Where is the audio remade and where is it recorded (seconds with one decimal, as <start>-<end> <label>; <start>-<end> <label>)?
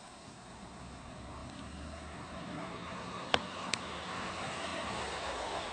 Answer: 0.0-5.7 remade